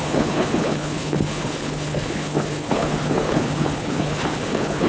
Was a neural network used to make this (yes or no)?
yes